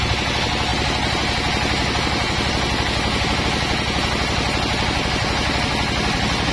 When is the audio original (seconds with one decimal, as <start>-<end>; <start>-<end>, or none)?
0.0-6.5